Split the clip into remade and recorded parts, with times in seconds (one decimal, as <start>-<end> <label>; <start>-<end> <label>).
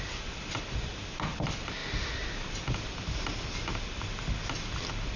0.0-5.2 recorded